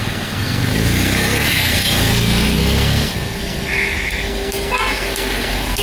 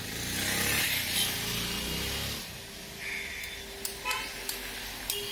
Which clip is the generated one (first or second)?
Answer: first